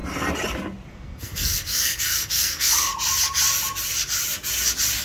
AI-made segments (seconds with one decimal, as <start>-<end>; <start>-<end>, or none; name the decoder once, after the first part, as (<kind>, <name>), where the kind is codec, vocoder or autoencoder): 0.9-2.9 (codec, SNAC)